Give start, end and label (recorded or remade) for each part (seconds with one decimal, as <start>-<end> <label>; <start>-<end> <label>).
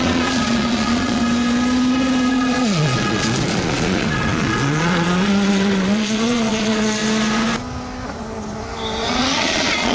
0.0-1.2 remade; 1.2-2.3 recorded; 2.3-7.0 remade; 7.0-9.1 recorded; 9.1-9.9 remade